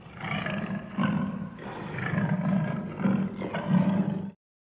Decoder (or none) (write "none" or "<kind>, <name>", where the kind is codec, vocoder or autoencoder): none